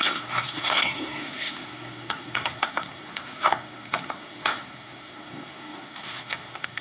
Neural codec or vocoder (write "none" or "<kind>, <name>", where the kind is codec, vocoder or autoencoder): codec, SNAC